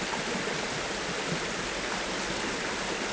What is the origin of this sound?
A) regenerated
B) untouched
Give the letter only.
B